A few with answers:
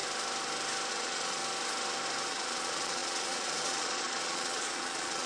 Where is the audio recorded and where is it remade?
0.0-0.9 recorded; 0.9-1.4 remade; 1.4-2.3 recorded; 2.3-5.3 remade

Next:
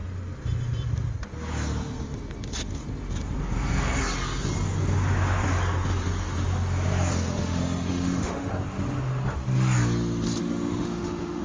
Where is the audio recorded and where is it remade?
0.0-7.4 recorded; 7.4-8.5 remade; 8.5-10.4 recorded; 10.4-11.4 remade

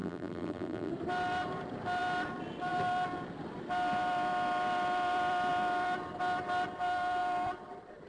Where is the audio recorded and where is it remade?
0.0-0.9 remade; 0.9-8.1 recorded

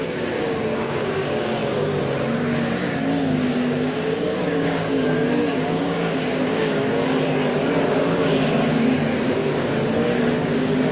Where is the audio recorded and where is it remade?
0.0-7.0 remade; 7.0-8.7 recorded; 8.7-10.9 remade

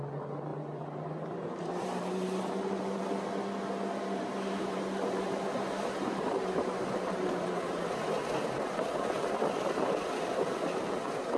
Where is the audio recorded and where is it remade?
0.0-0.5 recorded; 0.5-3.0 remade; 3.0-4.0 recorded; 4.0-8.0 remade; 8.0-11.4 recorded

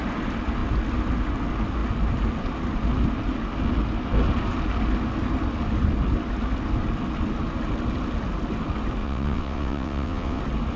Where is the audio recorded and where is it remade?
0.0-9.0 recorded; 9.0-10.4 remade; 10.4-10.8 recorded

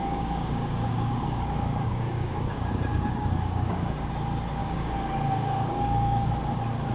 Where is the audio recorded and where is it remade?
0.0-4.1 remade; 4.1-4.6 recorded; 4.6-6.3 remade; 6.3-6.9 recorded

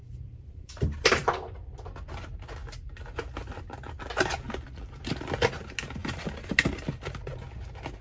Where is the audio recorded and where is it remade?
0.0-1.6 remade; 1.6-8.0 recorded